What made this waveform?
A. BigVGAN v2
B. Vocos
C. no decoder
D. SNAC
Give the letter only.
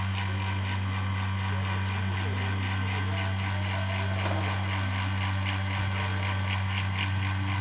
C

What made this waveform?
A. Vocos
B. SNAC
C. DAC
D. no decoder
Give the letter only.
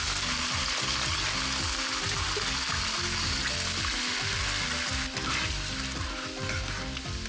D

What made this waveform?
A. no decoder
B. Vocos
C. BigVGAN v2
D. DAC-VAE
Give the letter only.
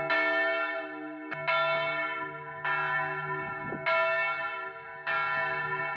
A